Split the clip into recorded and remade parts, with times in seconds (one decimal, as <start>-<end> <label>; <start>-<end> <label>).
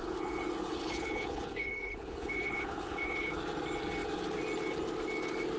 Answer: 0.0-3.4 remade; 3.4-5.6 recorded